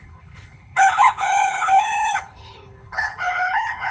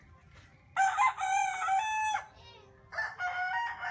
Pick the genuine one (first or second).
second